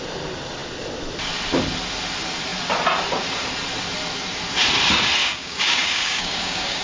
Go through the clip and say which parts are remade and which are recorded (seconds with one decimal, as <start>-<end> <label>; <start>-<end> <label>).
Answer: 0.0-5.2 recorded; 5.2-6.8 remade